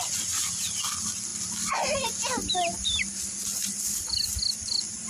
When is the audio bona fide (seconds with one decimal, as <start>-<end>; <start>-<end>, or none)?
0.0-5.1

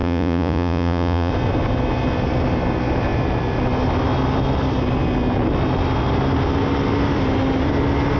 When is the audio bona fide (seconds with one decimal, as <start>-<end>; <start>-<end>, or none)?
1.3-8.2

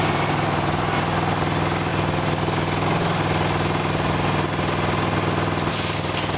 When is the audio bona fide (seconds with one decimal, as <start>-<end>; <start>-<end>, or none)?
0.0-6.4

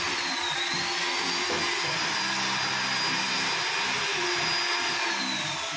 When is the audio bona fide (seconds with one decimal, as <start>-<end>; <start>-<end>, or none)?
0.0-5.8

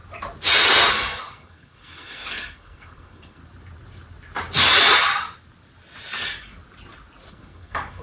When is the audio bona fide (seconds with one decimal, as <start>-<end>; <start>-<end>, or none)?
0.0-0.9; 3.4-7.3

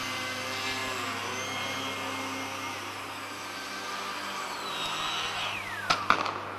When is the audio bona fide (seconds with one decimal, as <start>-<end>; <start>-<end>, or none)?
0.0-6.6

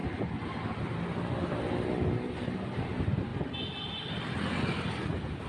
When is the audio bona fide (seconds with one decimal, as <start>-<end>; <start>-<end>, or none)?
0.0-5.5